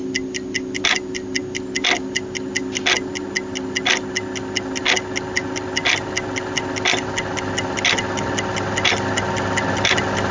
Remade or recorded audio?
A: recorded